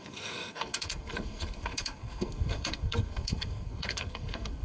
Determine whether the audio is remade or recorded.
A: remade